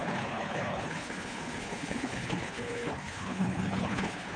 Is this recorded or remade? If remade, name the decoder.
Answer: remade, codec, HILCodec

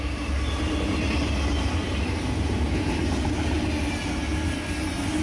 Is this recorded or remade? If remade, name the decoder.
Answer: recorded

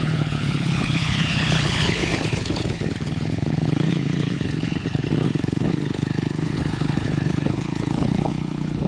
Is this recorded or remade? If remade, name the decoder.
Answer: remade, codec, HILCodec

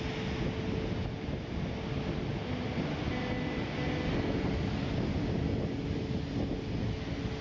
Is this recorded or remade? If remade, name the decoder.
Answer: recorded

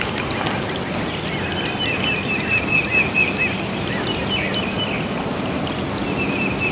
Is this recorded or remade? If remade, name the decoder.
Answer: recorded